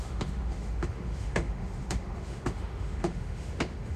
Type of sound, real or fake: fake